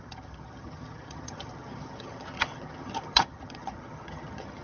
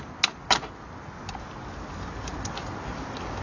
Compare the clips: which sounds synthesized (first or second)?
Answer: first